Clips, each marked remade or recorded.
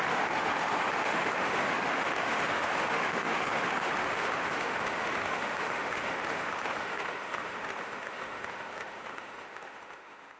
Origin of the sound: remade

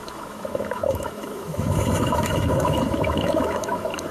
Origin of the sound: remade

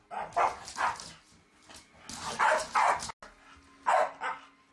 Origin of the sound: recorded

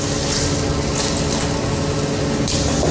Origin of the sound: recorded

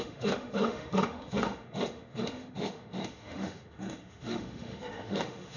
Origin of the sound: remade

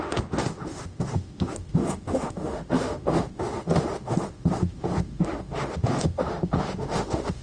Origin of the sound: remade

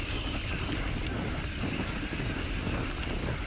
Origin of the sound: recorded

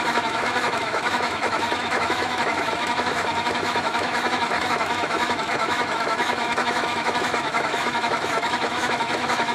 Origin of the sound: remade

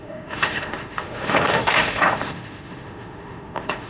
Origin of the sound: remade